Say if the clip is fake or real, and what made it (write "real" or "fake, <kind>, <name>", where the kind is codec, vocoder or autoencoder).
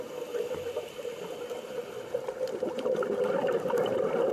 real